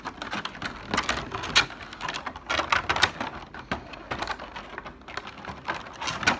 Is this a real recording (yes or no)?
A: yes